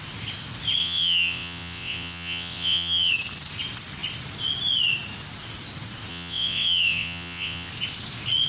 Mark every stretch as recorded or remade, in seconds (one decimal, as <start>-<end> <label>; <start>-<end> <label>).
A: 0.0-0.8 recorded; 0.8-3.1 remade; 3.1-6.1 recorded; 6.1-7.7 remade; 7.7-8.5 recorded